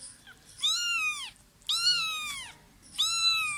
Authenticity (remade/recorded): recorded